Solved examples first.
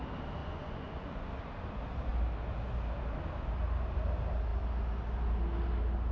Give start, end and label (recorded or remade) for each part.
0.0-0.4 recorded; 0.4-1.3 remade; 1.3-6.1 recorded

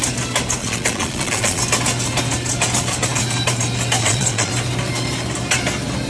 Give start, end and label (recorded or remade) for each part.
0.0-0.6 recorded; 0.6-1.6 remade; 1.6-4.0 recorded; 4.0-4.5 remade; 4.5-6.1 recorded

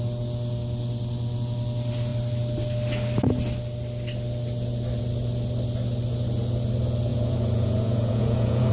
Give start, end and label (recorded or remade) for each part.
0.0-7.1 recorded; 7.1-8.7 remade

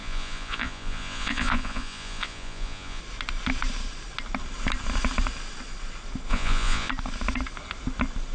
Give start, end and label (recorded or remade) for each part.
0.0-3.0 remade; 3.0-6.3 recorded; 6.3-6.9 remade; 6.9-8.3 recorded

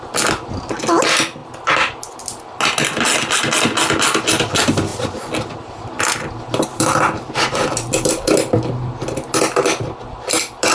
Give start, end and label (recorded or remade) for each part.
0.0-10.7 recorded

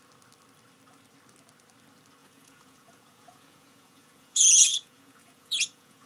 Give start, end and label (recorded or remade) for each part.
0.0-2.2 recorded; 2.2-6.1 remade